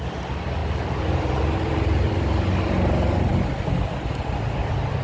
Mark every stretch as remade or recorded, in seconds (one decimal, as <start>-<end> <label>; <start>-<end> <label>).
0.0-0.6 recorded; 0.6-2.1 remade; 2.1-5.0 recorded